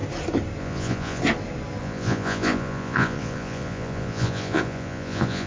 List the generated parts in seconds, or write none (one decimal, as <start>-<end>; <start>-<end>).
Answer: 0.6-1.2; 1.8-5.5